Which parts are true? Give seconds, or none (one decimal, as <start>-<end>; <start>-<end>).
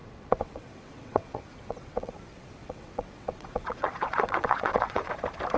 2.1-2.6; 5.1-5.6